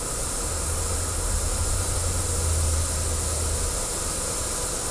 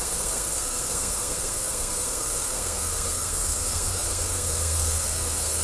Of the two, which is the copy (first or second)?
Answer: second